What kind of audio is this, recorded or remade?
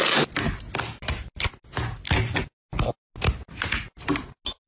recorded